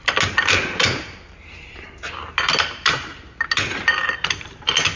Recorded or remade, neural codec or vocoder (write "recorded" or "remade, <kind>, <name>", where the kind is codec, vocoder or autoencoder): recorded